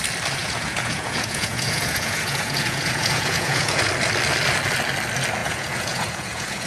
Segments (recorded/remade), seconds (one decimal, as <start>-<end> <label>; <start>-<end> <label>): 0.0-0.4 recorded; 0.4-3.9 remade; 3.9-5.4 recorded; 5.4-6.7 remade